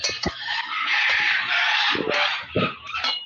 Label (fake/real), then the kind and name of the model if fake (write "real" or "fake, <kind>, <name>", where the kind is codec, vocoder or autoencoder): real